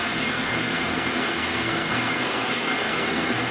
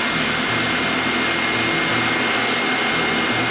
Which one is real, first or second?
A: second